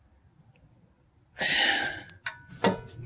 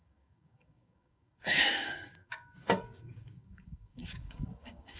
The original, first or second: first